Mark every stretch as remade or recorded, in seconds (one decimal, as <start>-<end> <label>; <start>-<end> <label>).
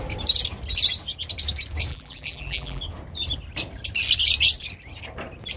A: 0.0-1.9 recorded; 1.9-2.8 remade; 2.8-5.6 recorded